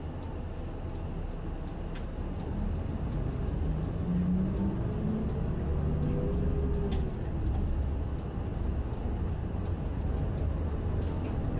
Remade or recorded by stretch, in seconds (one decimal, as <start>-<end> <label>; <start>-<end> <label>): 0.0-11.6 recorded